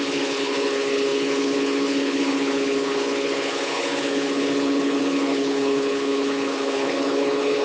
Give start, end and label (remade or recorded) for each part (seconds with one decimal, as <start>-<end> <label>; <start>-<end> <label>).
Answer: 0.0-7.6 remade